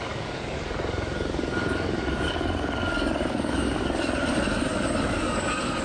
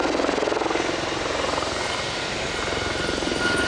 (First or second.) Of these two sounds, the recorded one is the second